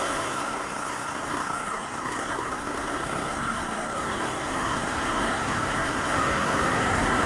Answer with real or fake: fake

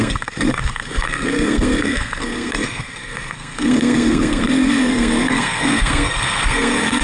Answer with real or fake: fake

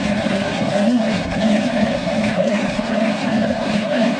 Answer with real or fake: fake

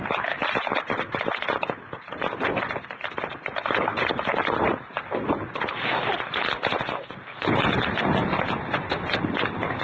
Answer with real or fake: real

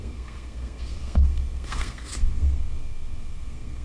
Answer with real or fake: fake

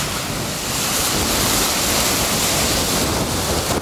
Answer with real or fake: real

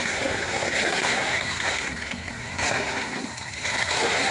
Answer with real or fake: fake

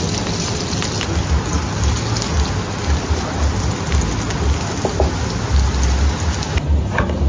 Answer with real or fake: real